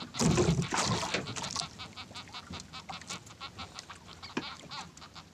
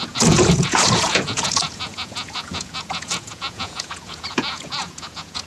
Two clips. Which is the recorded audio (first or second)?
first